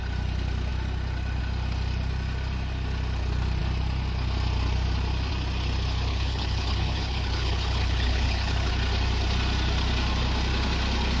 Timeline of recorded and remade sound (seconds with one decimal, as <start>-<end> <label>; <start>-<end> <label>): 0.0-6.1 recorded; 6.1-8.7 remade; 8.7-11.2 recorded